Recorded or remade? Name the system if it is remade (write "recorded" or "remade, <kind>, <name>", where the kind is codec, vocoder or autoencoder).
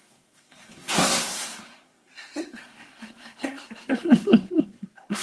remade, codec, SNAC